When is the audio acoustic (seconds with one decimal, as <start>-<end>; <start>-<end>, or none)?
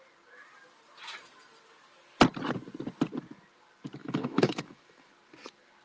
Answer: 0.0-4.0; 5.1-5.8